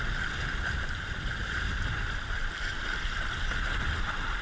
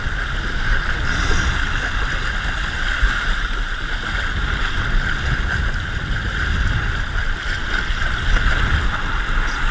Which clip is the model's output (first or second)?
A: first